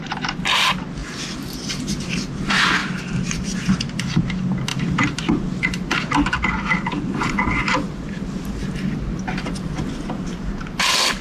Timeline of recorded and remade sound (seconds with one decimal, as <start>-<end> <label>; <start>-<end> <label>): 0.0-1.0 recorded; 1.0-2.4 remade; 2.4-2.8 recorded; 2.8-4.2 remade; 4.2-4.7 recorded; 4.7-9.5 remade; 9.5-11.2 recorded